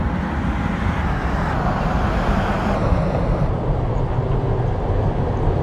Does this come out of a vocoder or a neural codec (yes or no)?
no